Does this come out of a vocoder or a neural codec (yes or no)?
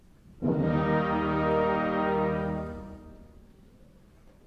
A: no